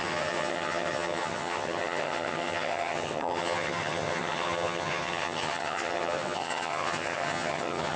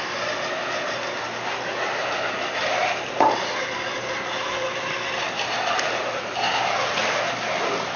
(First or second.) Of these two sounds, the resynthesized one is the first